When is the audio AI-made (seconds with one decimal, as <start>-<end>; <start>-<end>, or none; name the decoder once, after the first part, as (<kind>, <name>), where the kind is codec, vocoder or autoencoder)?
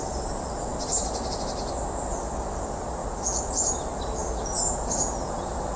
3.0-3.8 (vocoder, Vocos); 4.2-5.8